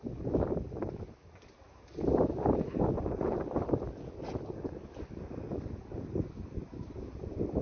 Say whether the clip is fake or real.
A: real